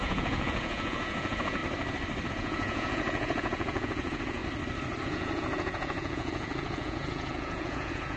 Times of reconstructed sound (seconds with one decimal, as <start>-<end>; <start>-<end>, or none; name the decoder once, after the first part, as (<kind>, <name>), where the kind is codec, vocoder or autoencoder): 0.0-1.6 (vocoder, Vocos); 2.3-4.4; 5.0-8.2